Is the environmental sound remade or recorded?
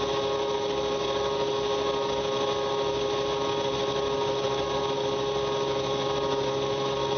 recorded